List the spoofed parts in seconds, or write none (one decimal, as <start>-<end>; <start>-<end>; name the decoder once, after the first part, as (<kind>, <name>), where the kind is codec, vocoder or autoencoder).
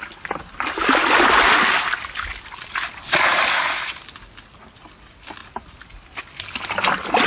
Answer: none